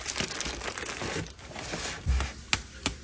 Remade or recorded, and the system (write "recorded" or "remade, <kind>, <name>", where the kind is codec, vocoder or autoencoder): recorded